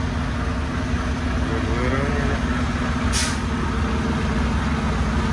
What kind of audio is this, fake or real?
real